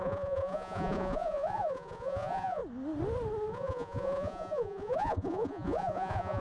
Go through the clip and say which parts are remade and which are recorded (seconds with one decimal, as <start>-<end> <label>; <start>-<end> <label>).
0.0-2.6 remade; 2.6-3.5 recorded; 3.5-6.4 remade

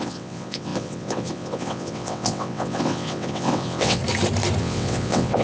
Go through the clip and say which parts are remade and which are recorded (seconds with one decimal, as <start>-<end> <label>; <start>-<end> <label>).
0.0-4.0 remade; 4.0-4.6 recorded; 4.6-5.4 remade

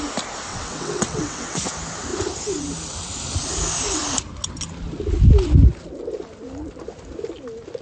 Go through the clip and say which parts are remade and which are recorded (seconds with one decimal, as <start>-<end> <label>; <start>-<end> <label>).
0.0-0.5 recorded; 0.5-1.7 remade; 1.7-7.8 recorded

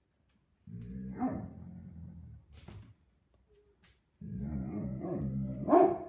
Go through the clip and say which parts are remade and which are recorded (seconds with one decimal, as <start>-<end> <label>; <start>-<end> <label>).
0.0-6.1 recorded

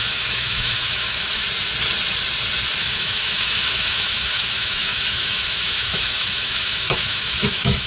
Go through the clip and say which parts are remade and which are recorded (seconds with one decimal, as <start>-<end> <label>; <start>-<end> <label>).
0.0-1.4 remade; 1.4-2.8 recorded; 2.8-7.9 remade